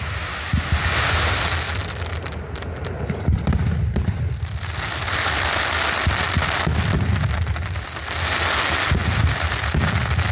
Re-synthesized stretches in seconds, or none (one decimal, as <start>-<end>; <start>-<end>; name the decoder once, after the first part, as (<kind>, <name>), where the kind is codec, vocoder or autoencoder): none